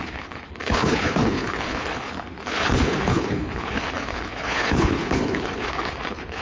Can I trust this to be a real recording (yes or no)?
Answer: no